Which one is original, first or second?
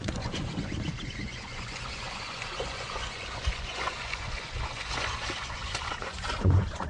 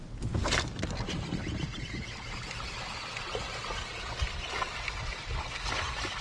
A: second